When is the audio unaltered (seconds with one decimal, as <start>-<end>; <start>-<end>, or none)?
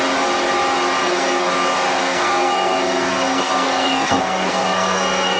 0.0-1.0; 1.5-2.0